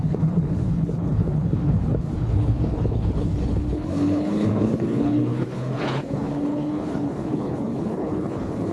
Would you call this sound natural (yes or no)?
no